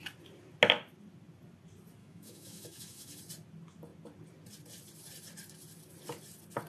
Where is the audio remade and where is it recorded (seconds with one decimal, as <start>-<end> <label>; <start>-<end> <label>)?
0.0-2.0 recorded; 2.0-3.2 remade; 3.2-6.7 recorded